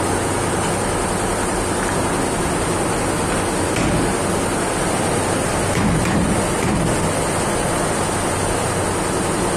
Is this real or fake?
real